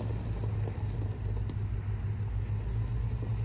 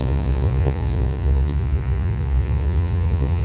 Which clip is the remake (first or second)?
second